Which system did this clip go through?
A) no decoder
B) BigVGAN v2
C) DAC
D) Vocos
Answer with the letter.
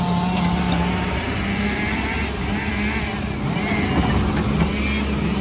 A